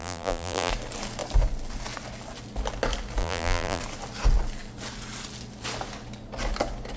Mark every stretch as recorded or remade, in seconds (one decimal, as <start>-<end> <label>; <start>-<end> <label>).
0.0-0.7 remade; 0.7-3.2 recorded; 3.2-3.8 remade; 3.8-7.0 recorded